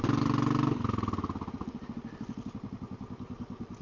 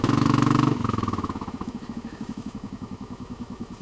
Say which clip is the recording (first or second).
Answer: first